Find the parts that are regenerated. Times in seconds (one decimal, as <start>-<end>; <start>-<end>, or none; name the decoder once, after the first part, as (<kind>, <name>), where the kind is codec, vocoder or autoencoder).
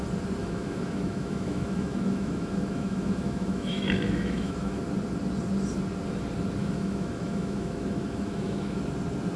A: 0.4-4.8 (autoencoder, DAC-VAE); 6.6-8.8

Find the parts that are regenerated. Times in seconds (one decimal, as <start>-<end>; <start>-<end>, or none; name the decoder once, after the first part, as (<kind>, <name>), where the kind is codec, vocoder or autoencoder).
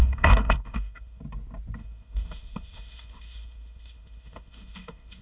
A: 0.0-1.2 (autoencoder, DAC-VAE); 1.8-5.2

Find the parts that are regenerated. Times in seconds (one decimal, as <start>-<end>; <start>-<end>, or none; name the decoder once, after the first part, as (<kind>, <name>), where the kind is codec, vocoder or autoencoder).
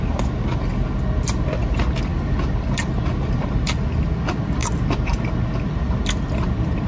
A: none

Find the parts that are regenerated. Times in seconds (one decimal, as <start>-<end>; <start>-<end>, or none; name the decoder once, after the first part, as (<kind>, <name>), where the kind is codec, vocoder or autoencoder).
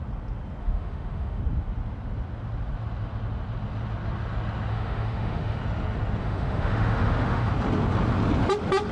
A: 0.6-1.4 (autoencoder, DAC-VAE); 4.7-5.6; 6.2-7.5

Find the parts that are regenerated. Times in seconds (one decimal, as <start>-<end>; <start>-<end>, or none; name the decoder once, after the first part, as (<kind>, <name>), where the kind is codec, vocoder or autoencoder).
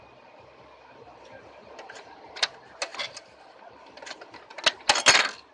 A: none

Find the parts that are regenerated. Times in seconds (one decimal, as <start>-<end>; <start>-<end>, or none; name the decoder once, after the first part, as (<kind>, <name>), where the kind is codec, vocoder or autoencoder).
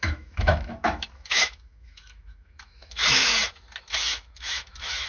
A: 0.0-3.3 (autoencoder, DAC-VAE); 3.9-5.1